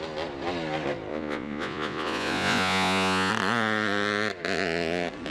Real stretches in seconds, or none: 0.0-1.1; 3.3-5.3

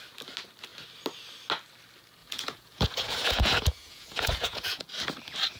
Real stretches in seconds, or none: 0.0-2.2; 4.8-5.6

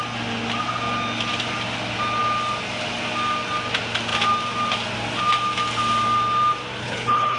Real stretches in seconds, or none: 0.0-6.8

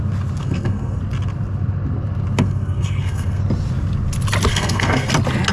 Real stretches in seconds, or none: 0.0-0.4; 1.0-2.4; 3.4-4.5; 5.1-5.5

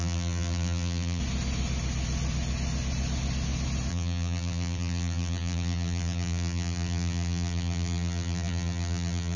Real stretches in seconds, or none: 1.2-3.9

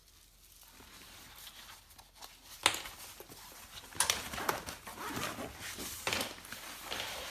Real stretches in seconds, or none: 0.0-7.3

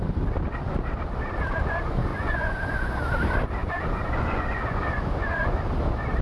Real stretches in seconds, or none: 0.0-2.1; 3.0-3.6; 5.5-6.2